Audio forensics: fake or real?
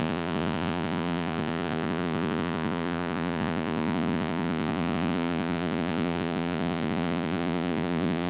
fake